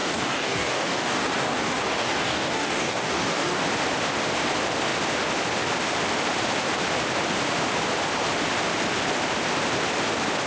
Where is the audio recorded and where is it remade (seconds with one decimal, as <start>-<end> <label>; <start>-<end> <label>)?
0.0-3.6 remade; 3.6-10.5 recorded